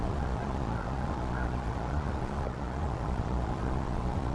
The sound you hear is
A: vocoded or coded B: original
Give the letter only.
A